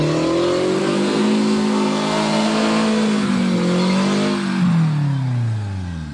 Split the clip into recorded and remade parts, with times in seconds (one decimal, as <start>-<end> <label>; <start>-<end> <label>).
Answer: 0.0-0.8 recorded; 0.8-3.3 remade; 3.3-6.1 recorded